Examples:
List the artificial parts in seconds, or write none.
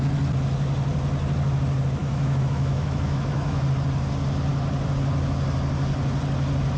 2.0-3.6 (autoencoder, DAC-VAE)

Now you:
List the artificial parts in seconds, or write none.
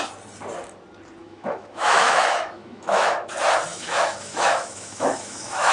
1.2-3.3 (autoencoder, DAC-VAE); 3.7-5.7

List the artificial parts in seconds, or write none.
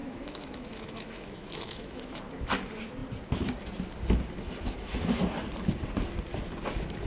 0.0-2.2 (autoencoder, DAC-VAE)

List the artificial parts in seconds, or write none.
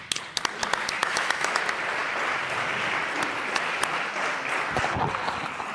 1.0-1.6 (autoencoder, DAC-VAE)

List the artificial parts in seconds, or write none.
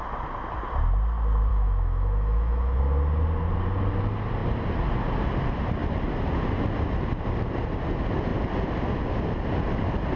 1.5-2.8 (autoencoder, DAC-VAE)